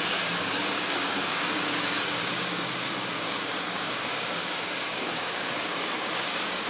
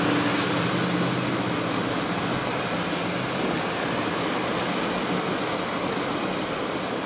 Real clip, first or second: second